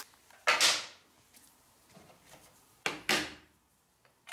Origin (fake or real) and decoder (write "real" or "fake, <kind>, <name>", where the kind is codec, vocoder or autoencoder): real